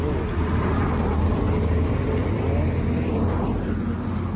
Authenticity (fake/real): real